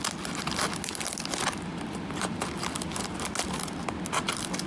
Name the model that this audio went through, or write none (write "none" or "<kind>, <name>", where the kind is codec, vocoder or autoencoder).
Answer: none